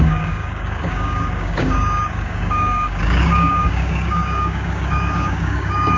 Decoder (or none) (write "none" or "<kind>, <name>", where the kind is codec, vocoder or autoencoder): codec, DAC